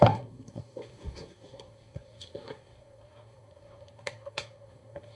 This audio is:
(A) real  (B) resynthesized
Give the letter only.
B